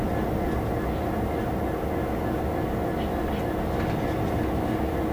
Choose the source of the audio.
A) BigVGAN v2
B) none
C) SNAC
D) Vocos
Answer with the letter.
B